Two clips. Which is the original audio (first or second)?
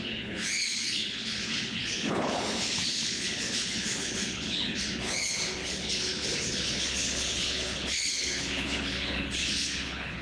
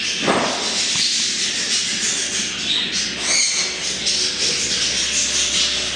second